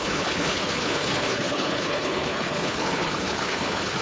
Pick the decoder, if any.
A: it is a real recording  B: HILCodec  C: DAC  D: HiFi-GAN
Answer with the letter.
B